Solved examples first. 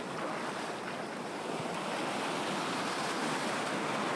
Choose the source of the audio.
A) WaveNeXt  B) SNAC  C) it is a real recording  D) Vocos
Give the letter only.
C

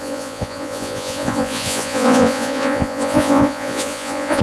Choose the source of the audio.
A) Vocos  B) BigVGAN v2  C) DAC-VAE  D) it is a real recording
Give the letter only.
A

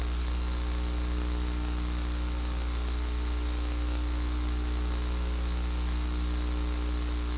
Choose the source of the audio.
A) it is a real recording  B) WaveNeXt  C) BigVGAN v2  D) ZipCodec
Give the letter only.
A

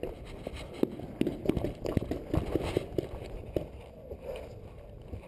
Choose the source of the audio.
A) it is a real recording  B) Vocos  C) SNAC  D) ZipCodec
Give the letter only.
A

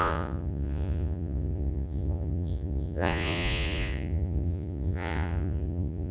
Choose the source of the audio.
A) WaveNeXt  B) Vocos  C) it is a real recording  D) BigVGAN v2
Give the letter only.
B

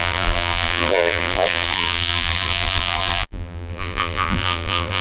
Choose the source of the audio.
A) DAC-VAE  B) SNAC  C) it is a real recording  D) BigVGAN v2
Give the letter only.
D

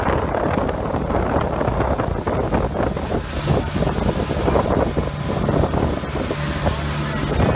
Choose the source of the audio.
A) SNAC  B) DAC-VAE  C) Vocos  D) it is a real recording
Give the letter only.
D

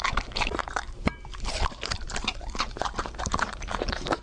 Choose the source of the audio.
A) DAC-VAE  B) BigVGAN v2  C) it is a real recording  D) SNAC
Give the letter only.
B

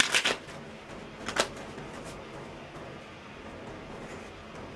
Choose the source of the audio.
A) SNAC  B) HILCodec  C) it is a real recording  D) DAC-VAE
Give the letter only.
C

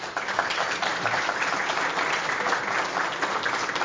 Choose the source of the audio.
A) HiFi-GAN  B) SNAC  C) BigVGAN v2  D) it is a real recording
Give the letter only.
D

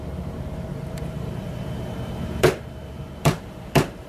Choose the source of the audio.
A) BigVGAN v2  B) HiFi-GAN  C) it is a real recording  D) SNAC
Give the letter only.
A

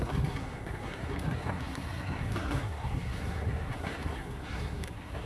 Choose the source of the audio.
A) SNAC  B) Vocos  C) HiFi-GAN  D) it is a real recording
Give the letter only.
A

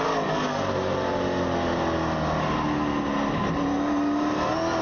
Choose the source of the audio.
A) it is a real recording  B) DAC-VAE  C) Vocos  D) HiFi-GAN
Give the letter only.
A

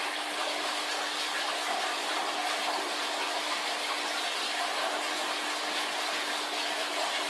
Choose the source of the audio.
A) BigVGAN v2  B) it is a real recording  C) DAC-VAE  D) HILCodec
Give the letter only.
B